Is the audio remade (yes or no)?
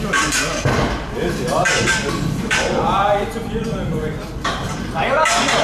yes